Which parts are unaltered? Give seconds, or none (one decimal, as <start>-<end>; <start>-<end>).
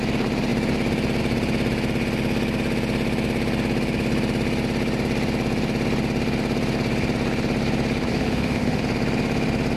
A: 0.0-8.1; 8.8-9.8